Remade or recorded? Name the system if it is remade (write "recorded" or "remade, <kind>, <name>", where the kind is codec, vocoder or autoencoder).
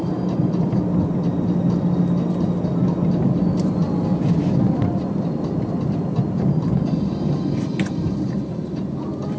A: recorded